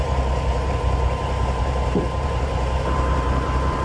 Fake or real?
fake